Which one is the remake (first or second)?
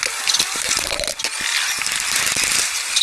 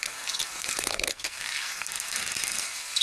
second